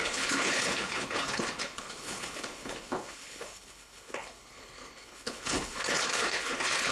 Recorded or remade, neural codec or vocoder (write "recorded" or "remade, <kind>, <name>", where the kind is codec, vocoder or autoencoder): remade, codec, HILCodec